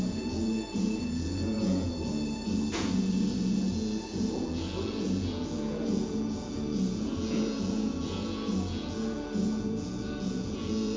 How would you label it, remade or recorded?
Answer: remade